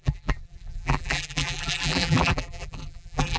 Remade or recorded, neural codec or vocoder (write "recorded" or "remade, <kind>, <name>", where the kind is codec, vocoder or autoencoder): remade, vocoder, BigVGAN v2